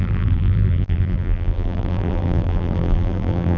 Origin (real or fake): fake